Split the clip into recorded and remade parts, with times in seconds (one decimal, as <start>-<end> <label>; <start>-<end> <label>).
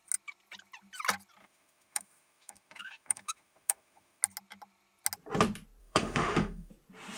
0.0-1.4 recorded; 1.4-4.2 remade; 4.2-5.8 recorded; 5.8-6.7 remade; 6.7-7.2 recorded